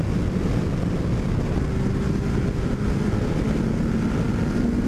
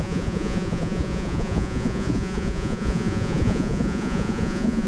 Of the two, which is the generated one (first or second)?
second